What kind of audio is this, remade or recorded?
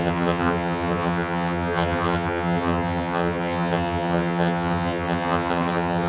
remade